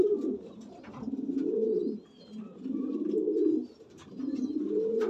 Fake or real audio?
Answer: real